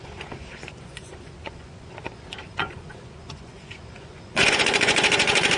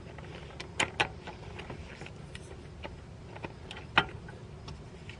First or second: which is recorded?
second